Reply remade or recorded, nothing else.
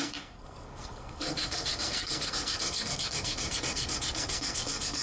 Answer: remade